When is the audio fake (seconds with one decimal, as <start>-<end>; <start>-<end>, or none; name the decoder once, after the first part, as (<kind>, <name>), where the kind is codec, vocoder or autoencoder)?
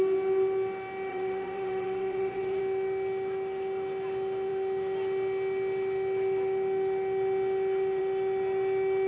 1.1-2.6 (vocoder, WaveNeXt)